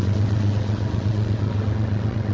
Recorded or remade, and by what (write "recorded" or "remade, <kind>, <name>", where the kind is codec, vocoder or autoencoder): remade, vocoder, WaveNeXt